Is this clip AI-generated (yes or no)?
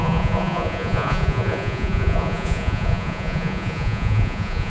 yes